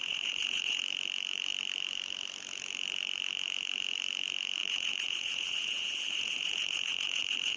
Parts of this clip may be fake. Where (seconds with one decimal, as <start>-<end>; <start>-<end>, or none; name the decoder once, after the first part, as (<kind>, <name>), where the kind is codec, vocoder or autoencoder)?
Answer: 0.0-0.8 (vocoder, Vocos); 4.6-7.6